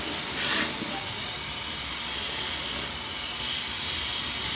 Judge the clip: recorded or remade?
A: recorded